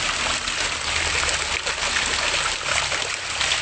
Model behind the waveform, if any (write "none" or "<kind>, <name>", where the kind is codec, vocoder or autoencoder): none